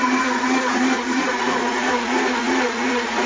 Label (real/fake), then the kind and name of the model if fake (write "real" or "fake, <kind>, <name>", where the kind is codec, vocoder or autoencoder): fake, vocoder, Vocos